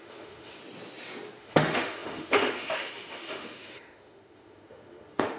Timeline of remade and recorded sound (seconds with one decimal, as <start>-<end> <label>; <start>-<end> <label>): 0.0-0.6 remade; 0.6-1.4 recorded; 1.4-5.4 remade